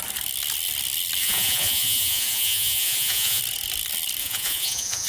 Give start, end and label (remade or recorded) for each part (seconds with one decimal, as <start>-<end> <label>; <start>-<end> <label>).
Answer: 0.0-1.2 recorded; 1.2-3.4 remade; 3.4-4.2 recorded; 4.2-5.1 remade